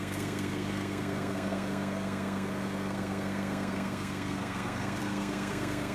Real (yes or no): no